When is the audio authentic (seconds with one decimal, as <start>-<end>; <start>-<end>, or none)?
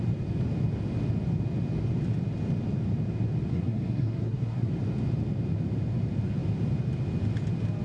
0.0-3.5; 4.7-7.8